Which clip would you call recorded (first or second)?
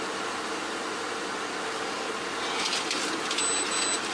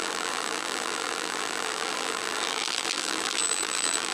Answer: first